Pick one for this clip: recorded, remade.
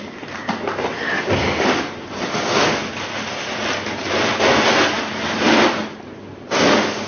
recorded